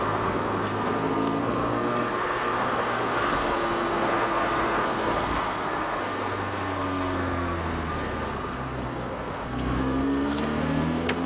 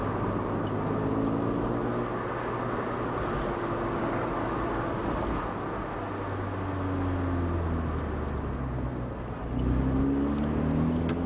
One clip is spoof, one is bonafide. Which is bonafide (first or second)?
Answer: second